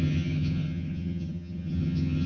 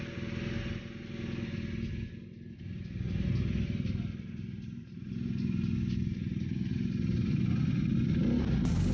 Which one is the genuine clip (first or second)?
second